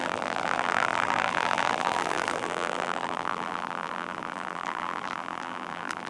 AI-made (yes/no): yes